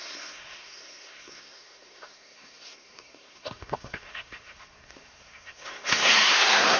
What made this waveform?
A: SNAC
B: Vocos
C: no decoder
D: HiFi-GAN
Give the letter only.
A